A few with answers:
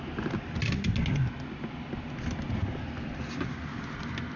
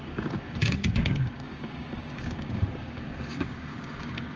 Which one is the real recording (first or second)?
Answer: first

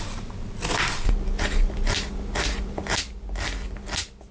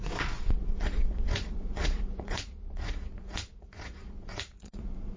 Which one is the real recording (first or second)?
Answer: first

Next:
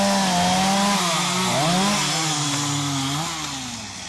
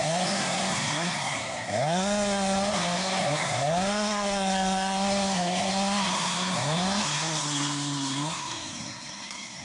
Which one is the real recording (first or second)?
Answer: first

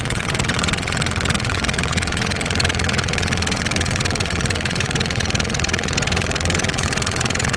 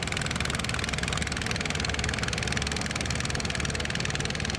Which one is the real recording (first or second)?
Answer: second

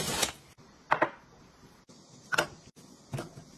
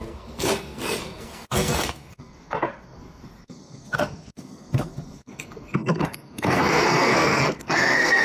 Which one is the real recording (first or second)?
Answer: first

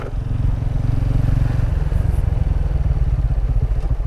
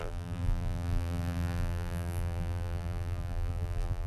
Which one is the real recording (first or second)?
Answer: first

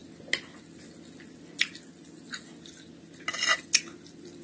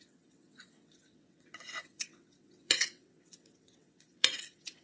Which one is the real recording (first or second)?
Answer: first